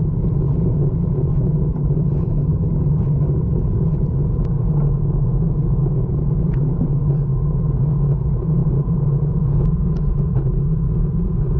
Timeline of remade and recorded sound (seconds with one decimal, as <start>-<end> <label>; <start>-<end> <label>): 0.0-2.5 remade; 2.5-3.0 recorded; 3.0-7.0 remade; 7.0-8.2 recorded; 8.2-11.6 remade